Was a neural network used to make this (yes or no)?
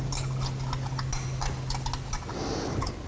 no